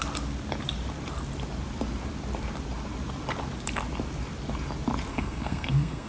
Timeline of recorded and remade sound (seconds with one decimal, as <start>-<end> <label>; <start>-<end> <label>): 0.0-5.1 recorded; 5.1-6.1 remade